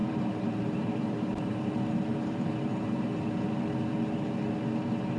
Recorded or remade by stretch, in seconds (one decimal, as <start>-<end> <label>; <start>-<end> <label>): 0.0-1.7 remade; 1.7-2.1 recorded; 2.1-3.3 remade; 3.3-5.2 recorded